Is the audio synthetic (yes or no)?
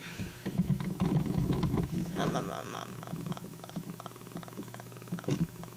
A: yes